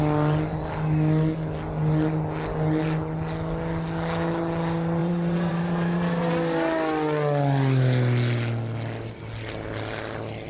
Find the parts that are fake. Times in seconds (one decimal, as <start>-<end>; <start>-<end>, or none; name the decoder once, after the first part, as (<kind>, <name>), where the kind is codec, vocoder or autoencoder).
5.0-6.3 (vocoder, BigVGAN v2)